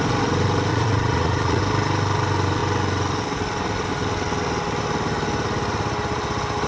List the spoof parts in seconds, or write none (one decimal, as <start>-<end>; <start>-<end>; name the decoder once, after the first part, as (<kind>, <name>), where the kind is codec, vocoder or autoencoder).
0.7-1.6 (vocoder, Vocos)